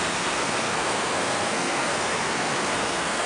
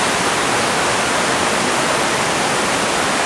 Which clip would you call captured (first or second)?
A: second